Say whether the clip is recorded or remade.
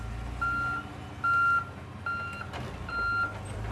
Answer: recorded